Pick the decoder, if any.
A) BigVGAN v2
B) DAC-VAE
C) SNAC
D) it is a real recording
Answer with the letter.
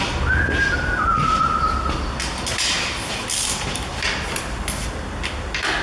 D